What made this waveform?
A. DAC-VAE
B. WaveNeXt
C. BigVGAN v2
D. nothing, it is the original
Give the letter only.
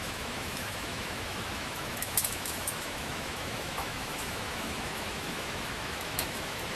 A